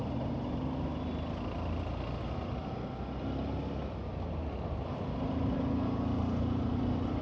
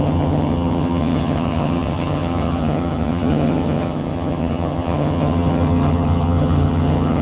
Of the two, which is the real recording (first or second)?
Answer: first